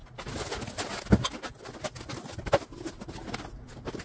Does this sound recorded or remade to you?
recorded